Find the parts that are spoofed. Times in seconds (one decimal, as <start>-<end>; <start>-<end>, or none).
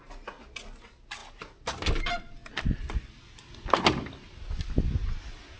none